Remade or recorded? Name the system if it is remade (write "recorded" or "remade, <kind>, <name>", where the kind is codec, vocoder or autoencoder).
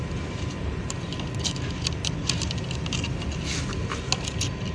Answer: recorded